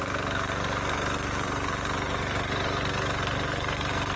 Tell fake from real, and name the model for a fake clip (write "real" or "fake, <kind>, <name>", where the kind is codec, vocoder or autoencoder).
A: fake, codec, SNAC